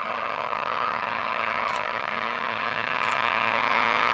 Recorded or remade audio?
remade